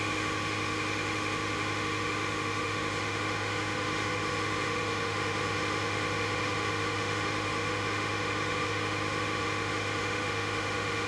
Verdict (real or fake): fake